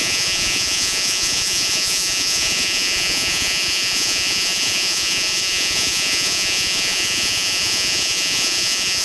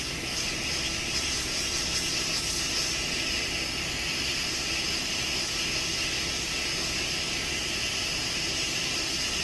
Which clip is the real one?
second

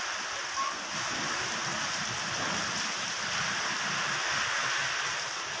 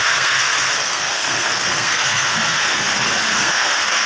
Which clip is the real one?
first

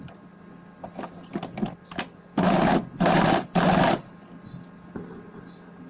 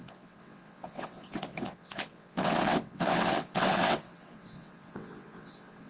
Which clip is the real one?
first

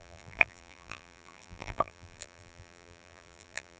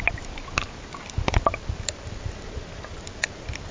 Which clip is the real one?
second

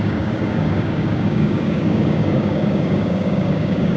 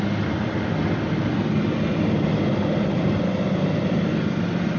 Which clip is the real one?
second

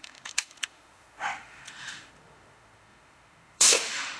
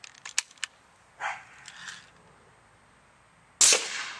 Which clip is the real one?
second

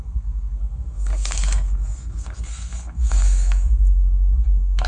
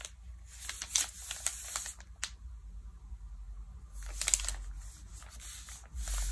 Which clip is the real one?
second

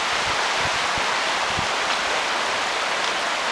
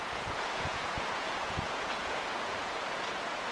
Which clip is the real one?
first